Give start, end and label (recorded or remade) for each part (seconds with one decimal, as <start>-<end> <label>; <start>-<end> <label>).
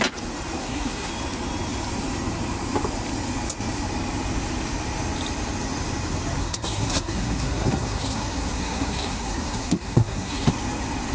0.0-0.6 recorded; 0.6-1.1 remade; 1.1-6.4 recorded; 6.4-10.5 remade; 10.5-11.1 recorded